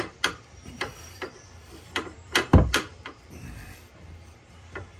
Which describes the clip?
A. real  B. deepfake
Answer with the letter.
B